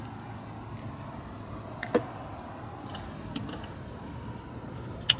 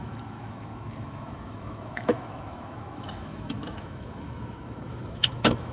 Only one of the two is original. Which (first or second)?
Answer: first